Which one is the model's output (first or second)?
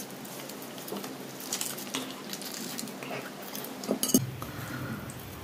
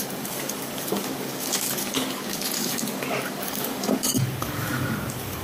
second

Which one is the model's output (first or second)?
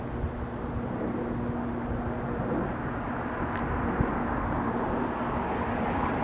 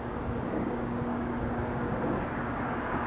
second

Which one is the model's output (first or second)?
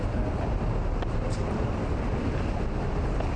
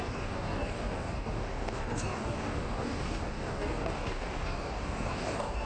second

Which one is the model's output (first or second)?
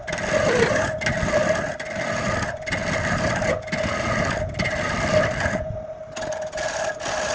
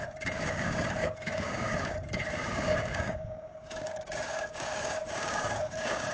second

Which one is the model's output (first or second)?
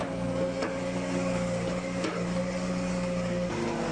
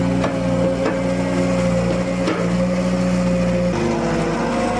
first